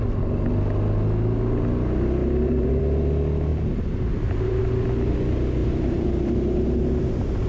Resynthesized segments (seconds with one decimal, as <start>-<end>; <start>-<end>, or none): 2.2-2.8; 3.5-4.6; 5.6-7.0